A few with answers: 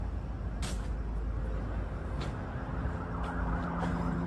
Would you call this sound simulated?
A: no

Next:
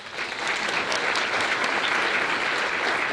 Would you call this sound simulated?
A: no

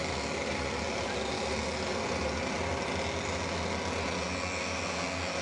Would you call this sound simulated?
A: no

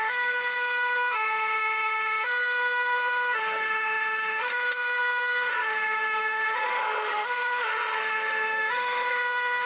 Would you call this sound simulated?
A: yes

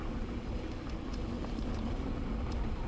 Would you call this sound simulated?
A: no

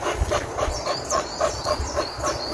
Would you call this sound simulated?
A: yes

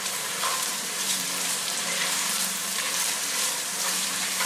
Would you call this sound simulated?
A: yes